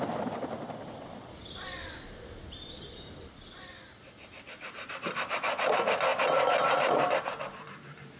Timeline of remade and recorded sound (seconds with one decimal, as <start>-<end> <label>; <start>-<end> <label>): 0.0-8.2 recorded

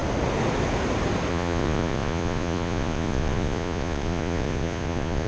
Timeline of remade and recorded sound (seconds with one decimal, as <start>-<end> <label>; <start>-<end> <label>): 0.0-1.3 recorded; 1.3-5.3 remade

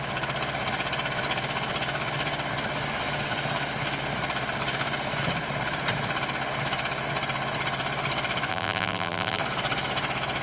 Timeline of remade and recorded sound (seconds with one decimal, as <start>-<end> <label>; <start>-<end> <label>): 0.0-8.5 recorded; 8.5-9.4 remade; 9.4-10.4 recorded